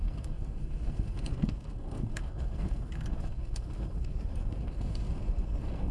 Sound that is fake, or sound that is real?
fake